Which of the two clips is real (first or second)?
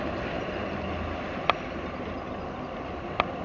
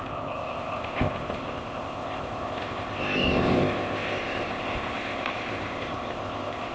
first